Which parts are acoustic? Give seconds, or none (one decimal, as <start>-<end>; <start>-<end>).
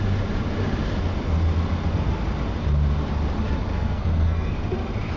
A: 0.0-3.7; 4.5-5.2